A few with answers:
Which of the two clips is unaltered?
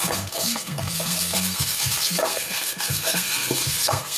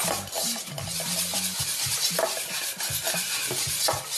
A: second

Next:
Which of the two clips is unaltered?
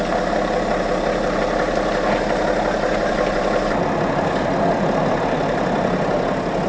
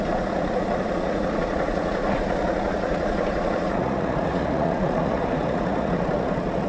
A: first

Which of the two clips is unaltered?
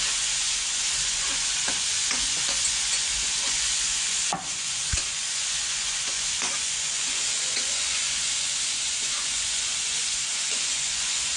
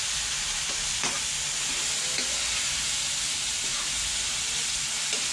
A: second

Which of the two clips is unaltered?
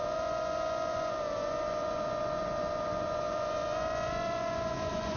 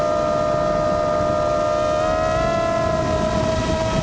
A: second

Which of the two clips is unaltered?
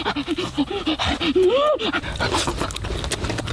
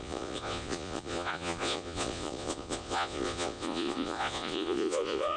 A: first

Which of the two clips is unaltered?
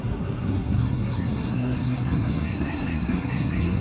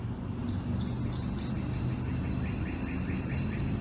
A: second